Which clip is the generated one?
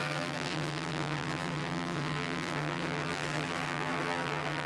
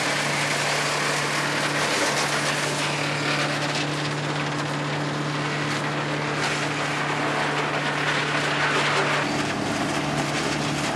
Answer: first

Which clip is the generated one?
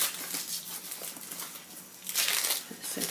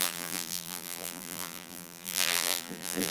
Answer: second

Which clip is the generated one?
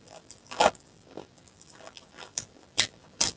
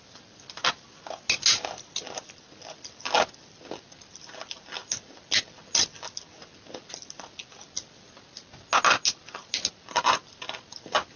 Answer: first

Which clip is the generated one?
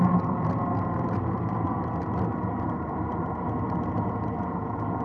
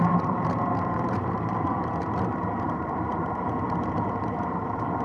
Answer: second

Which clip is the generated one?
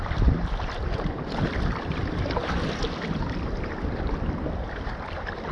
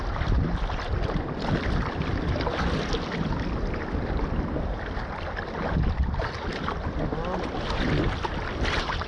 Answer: first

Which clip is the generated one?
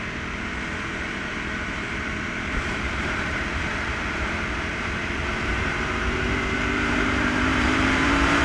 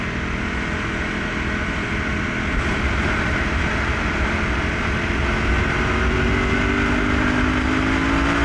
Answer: first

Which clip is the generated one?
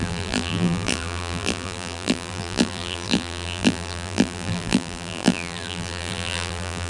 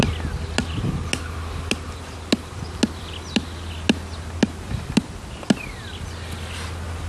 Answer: first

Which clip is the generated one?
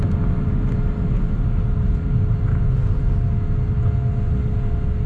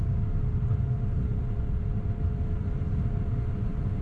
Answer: second